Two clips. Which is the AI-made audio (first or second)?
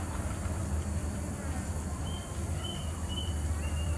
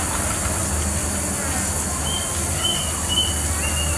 first